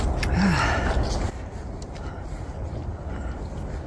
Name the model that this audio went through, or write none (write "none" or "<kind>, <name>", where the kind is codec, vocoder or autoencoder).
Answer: none